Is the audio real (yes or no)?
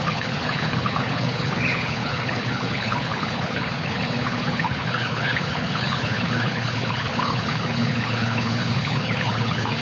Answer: no